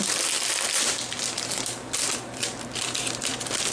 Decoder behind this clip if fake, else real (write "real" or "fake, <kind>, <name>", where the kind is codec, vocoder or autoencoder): real